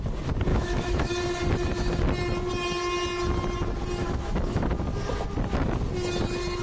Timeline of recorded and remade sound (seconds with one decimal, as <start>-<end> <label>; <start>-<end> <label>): 0.0-0.5 recorded; 0.5-1.1 remade; 1.1-4.0 recorded; 4.0-4.7 remade; 4.7-6.6 recorded